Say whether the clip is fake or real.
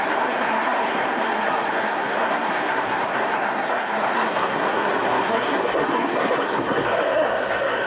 fake